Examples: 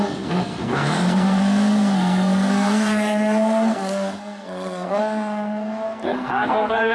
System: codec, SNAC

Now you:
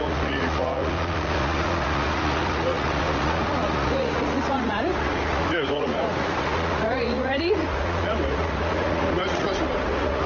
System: vocoder, Vocos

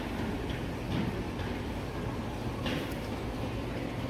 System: none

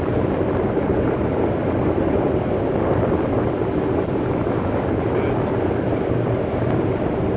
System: none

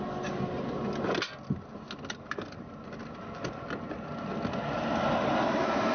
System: none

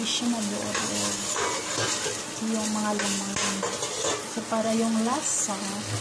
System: none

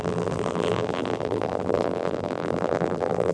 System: vocoder, BigVGAN v2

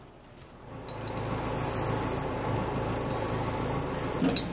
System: none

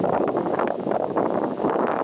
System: codec, DAC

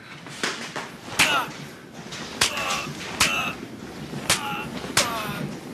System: none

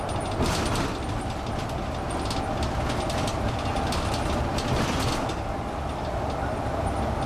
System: none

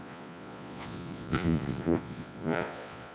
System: vocoder, Vocos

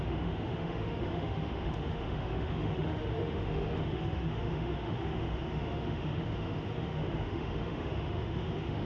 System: autoencoder, DAC-VAE